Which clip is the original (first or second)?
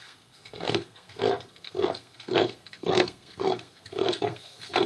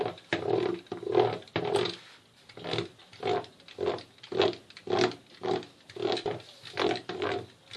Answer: second